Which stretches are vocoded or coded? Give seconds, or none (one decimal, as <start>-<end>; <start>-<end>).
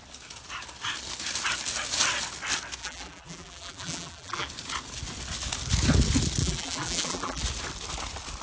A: 2.8-4.5; 6.4-7.4